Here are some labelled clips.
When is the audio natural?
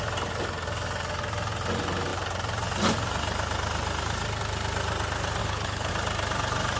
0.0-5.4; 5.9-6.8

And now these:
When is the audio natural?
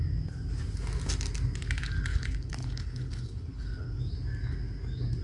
0.0-2.1; 4.0-5.2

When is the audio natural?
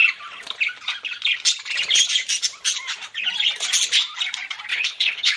0.0-4.7